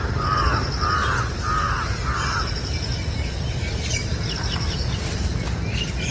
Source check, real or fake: real